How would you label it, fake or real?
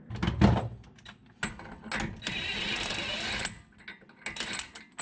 real